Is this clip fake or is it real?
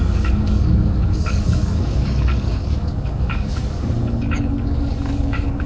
fake